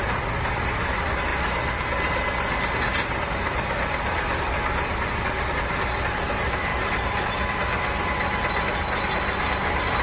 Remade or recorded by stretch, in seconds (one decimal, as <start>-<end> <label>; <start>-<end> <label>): 0.0-6.7 recorded; 6.7-7.4 remade; 7.4-10.0 recorded